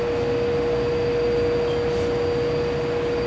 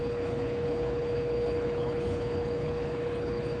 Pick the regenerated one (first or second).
second